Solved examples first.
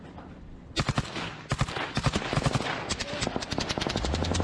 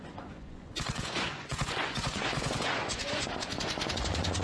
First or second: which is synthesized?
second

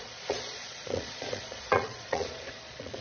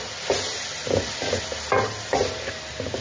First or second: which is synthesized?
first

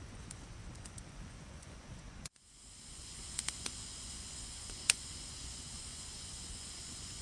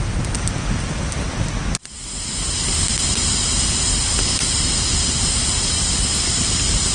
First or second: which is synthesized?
first